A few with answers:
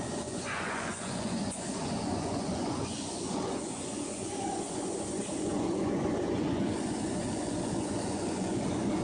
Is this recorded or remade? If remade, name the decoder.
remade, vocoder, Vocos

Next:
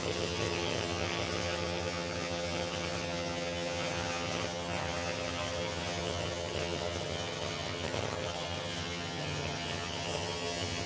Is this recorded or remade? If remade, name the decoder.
remade, vocoder, HiFi-GAN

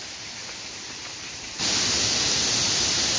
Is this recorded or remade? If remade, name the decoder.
recorded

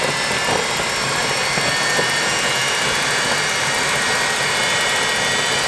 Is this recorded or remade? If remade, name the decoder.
recorded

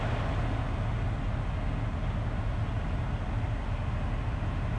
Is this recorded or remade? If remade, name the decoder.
recorded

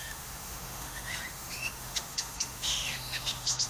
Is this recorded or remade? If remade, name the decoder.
remade, autoencoder, DAC-VAE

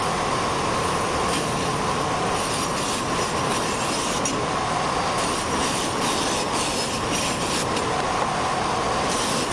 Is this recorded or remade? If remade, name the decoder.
recorded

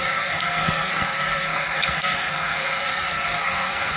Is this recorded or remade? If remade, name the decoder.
remade, codec, SNAC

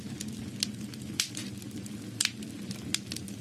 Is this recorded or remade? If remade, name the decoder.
recorded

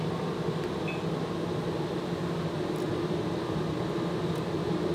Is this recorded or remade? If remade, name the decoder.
recorded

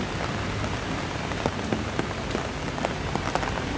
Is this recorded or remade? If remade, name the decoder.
recorded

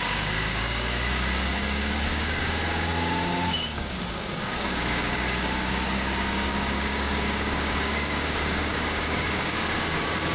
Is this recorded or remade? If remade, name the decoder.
remade, codec, DAC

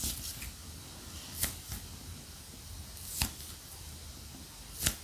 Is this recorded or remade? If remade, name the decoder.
recorded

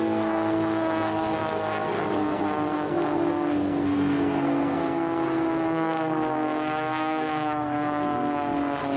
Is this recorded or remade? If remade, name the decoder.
remade, codec, SNAC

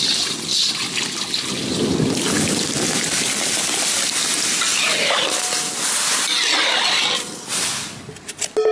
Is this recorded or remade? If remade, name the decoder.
recorded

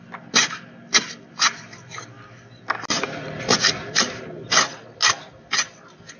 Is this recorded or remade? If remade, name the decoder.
recorded